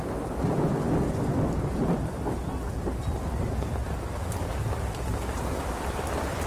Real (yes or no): yes